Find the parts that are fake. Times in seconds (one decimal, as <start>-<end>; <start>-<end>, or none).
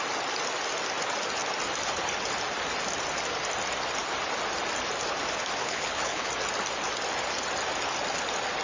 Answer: 5.6-6.3